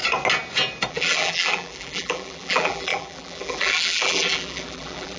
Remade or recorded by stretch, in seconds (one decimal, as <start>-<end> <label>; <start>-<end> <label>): 0.0-0.9 recorded; 0.9-5.2 remade